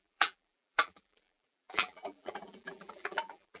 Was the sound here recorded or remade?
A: remade